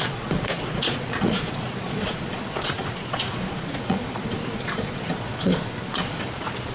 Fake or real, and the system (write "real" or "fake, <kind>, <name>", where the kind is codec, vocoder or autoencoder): fake, vocoder, Vocos